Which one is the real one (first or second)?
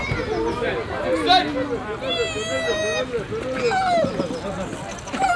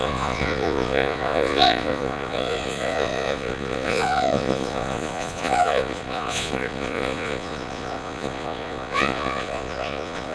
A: first